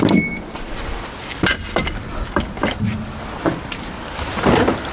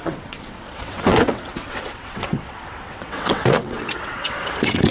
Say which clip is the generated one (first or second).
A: second